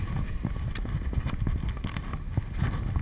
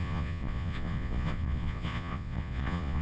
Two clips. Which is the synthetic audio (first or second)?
second